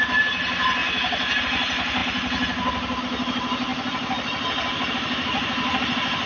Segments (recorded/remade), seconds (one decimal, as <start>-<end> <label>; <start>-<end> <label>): 0.0-6.3 recorded